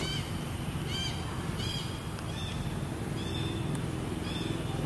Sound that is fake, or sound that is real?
real